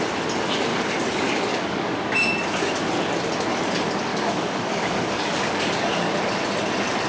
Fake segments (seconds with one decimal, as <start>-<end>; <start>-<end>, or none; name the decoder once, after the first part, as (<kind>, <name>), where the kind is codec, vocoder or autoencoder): 0.7-2.0 (codec, DAC); 4.1-6.1